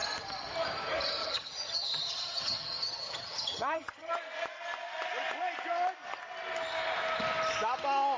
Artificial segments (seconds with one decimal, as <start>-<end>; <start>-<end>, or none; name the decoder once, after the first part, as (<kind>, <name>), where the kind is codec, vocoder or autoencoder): 1.2-4.1 (vocoder, HiFi-GAN)